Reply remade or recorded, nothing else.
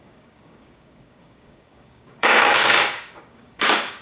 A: remade